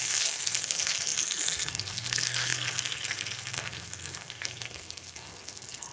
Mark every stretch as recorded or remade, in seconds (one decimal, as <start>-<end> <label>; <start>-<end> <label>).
0.0-5.9 remade